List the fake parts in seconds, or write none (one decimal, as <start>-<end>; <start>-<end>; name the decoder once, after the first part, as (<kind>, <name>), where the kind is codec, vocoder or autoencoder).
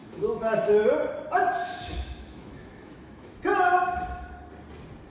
0.0-0.8 (autoencoder, DAC-VAE); 1.6-3.4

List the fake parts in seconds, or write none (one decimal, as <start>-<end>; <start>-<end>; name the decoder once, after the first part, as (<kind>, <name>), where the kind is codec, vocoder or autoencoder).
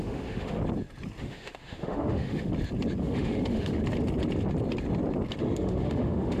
0.0-0.6 (autoencoder, DAC-VAE); 1.2-2.5; 3.0-3.8; 5.4-6.4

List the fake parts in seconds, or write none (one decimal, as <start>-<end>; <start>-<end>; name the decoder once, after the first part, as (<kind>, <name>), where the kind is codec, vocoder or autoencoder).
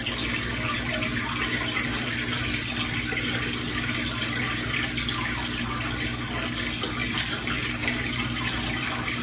none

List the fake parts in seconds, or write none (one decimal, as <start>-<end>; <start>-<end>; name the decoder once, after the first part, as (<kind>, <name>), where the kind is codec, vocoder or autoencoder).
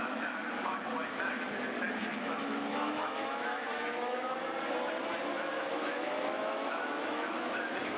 0.0-0.4 (autoencoder, DAC-VAE); 2.1-4.4; 5.7-8.0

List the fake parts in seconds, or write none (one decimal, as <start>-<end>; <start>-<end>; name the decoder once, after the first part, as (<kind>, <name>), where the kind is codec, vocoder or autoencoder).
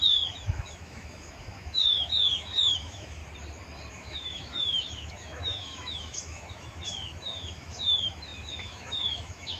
0.0-3.2 (autoencoder, DAC-VAE); 3.9-9.6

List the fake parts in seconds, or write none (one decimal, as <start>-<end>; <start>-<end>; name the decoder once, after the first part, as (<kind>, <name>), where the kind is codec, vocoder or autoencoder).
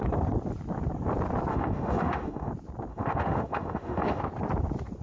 1.5-2.5 (autoencoder, DAC-VAE); 2.9-4.2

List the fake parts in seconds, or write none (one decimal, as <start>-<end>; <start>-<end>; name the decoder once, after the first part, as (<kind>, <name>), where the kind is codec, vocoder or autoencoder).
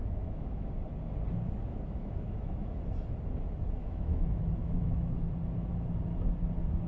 0.0-0.7 (autoencoder, DAC-VAE); 1.7-2.8; 3.8-5.1